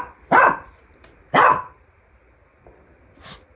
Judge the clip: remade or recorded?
recorded